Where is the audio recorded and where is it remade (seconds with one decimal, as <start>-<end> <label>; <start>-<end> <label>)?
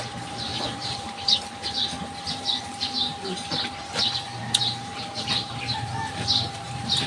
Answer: 0.0-0.5 remade; 0.5-1.0 recorded; 1.0-1.6 remade; 1.6-2.6 recorded; 2.6-3.1 remade; 3.1-4.4 recorded; 4.4-7.1 remade